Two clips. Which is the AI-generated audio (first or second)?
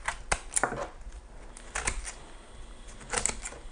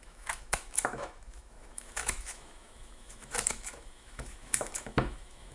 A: second